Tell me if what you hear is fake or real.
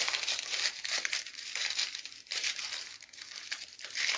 fake